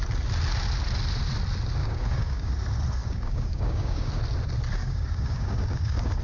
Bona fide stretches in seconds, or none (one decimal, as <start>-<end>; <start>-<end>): 0.0-1.8; 2.5-3.0; 4.1-4.8